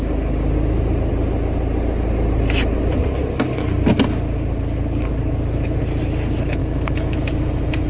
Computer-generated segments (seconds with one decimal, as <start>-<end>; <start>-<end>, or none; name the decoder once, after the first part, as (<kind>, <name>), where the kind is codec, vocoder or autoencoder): 6.6-7.9 (autoencoder, DAC-VAE)